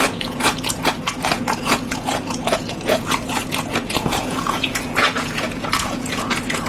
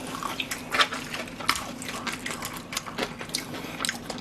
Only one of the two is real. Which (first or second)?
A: second